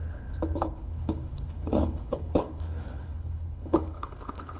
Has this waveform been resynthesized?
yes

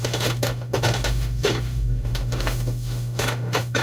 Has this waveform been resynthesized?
yes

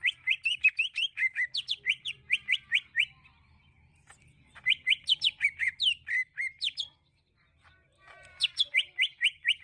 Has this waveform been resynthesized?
no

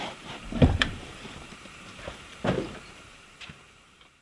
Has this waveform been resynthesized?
yes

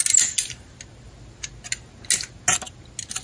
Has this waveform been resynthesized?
no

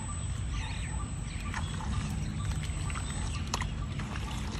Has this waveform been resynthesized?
no